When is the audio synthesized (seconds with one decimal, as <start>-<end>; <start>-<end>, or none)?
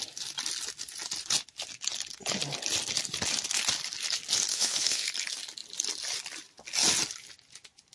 4.5-5.1